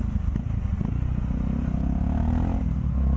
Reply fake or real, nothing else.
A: real